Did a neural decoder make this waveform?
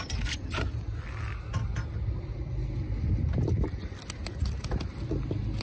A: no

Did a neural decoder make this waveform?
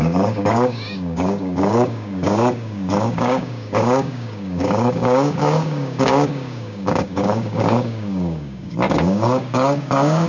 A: yes